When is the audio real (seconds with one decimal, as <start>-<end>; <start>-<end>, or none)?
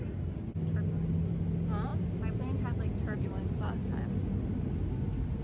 0.0-5.4